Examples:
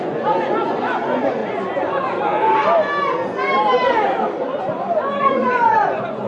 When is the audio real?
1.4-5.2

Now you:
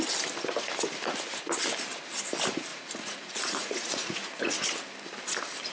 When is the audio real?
0.0-2.7; 4.5-5.7

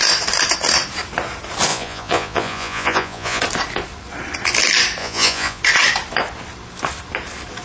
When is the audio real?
0.0-1.7; 3.4-5.0; 5.6-7.6